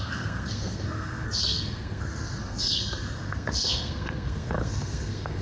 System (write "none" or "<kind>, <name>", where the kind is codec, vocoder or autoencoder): codec, SNAC